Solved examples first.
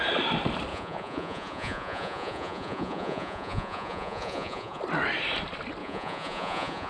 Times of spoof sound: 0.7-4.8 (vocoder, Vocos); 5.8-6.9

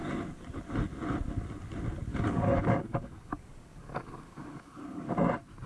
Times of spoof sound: 2.1-5.1 (codec, DAC)

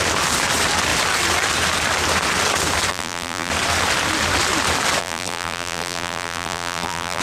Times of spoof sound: 2.9-3.5 (vocoder, BigVGAN v2); 5.0-7.2